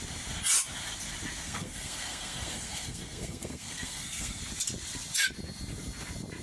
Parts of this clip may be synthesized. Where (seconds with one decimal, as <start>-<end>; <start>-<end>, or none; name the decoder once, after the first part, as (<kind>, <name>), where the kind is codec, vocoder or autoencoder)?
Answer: 1.4-4.4 (codec, SNAC)